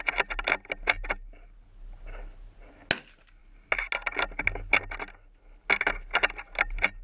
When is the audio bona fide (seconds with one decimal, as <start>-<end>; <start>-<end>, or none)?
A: 0.0-7.0